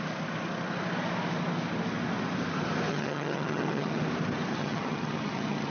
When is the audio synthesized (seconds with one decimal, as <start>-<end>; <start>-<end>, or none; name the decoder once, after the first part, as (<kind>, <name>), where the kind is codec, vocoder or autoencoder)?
2.9-4.0 (vocoder, HiFi-GAN); 4.5-5.7